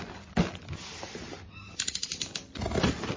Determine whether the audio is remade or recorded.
recorded